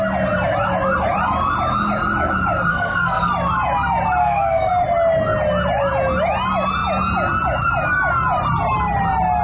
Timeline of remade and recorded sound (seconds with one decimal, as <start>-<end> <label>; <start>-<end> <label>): 0.0-2.7 recorded; 2.7-3.3 remade; 3.3-4.2 recorded; 4.2-4.7 remade; 4.7-9.4 recorded